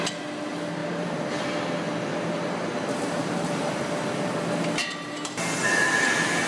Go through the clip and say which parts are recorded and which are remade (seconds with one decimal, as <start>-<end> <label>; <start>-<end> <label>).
0.0-0.8 recorded; 0.8-1.4 remade; 1.4-2.1 recorded; 2.1-3.8 remade; 3.8-4.8 recorded; 4.8-5.4 remade; 5.4-6.5 recorded